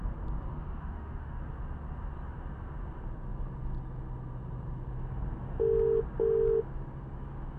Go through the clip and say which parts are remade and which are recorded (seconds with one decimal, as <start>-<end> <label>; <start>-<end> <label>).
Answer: 0.0-0.5 recorded; 0.5-1.4 remade; 1.4-7.6 recorded